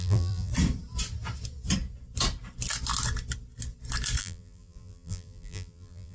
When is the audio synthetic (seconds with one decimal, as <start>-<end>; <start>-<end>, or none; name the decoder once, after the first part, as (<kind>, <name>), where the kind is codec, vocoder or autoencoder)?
0.0-0.5 (vocoder, BigVGAN v2); 4.2-6.1